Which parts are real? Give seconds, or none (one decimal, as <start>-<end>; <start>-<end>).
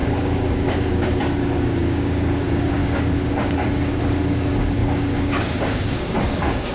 none